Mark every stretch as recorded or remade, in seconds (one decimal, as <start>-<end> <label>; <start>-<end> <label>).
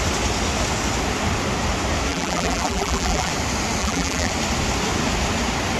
0.0-2.1 recorded; 2.1-3.3 remade; 3.3-3.8 recorded; 3.8-4.3 remade; 4.3-5.8 recorded